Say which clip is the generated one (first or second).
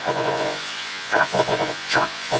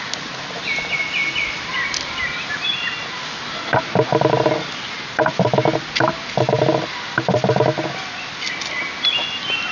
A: first